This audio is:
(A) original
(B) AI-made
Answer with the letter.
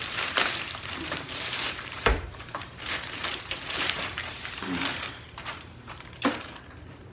B